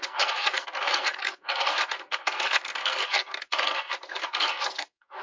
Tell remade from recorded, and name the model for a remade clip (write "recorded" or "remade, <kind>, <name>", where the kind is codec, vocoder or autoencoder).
remade, codec, SNAC